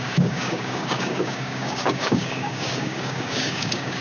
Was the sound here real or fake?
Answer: fake